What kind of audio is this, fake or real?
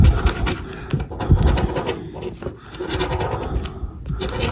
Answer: real